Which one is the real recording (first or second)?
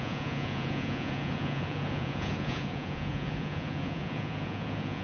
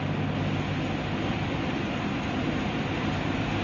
second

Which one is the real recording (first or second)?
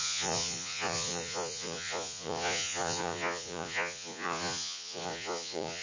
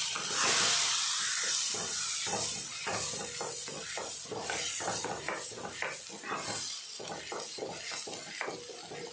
second